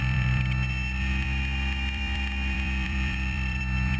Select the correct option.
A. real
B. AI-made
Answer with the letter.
B